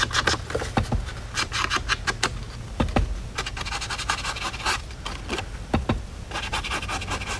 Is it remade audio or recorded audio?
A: recorded